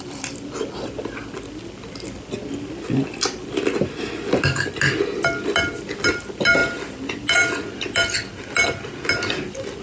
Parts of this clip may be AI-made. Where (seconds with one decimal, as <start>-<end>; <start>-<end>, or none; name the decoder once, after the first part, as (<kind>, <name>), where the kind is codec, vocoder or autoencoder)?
none